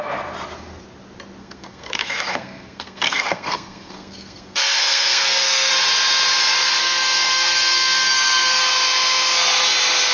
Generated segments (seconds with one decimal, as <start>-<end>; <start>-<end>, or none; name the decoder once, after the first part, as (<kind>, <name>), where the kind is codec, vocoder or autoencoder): 1.4-5.7 (codec, SNAC); 6.8-8.6